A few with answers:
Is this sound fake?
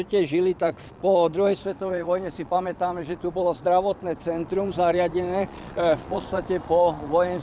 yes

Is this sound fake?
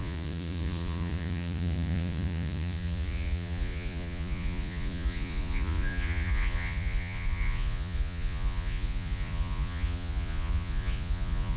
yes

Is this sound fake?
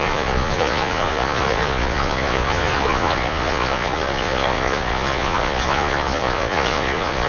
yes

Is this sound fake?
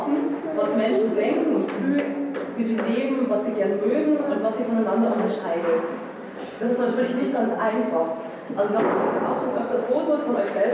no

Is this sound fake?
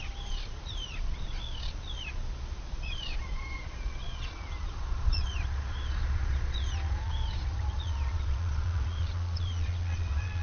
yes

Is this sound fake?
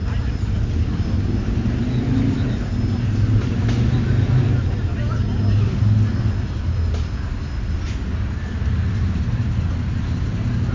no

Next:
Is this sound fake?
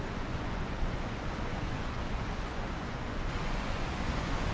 yes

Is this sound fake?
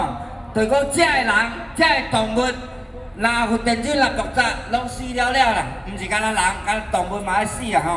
no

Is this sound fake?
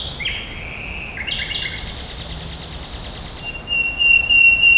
no